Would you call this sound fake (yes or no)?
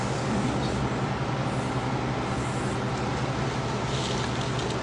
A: no